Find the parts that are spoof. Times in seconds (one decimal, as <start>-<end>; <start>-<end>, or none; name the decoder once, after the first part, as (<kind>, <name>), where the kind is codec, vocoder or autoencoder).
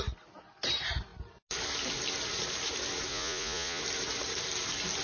3.1-3.8 (vocoder, Vocos)